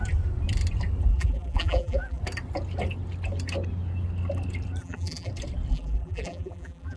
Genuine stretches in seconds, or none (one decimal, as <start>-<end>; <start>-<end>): 0.0-1.1; 2.2-4.8; 5.3-5.7